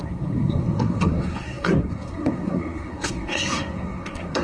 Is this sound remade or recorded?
remade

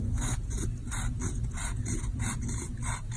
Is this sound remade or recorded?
recorded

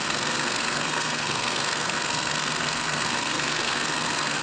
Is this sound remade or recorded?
remade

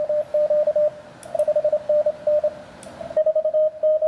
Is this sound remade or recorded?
recorded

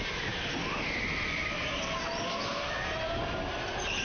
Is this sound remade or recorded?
recorded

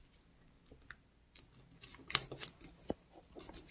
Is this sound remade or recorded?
recorded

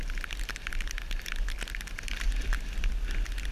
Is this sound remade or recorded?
recorded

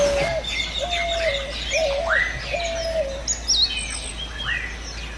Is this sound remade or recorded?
recorded